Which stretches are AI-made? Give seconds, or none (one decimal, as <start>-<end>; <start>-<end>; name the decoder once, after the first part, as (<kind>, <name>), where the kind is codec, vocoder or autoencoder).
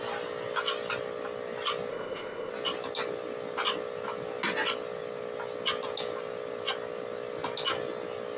1.9-2.5 (codec, ZipCodec)